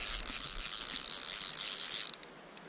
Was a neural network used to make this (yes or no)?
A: no